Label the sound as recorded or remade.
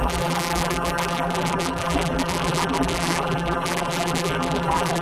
remade